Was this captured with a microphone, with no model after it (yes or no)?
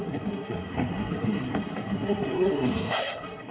no